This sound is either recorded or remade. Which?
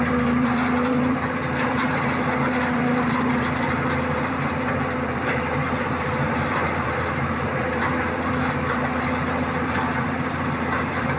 remade